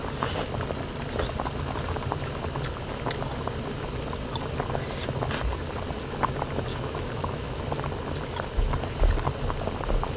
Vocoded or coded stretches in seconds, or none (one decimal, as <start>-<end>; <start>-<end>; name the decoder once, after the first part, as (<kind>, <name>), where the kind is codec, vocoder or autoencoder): 6.7-7.6 (autoencoder, DAC-VAE)